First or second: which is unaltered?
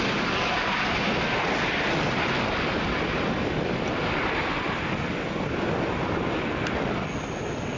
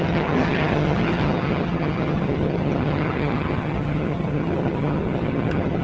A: first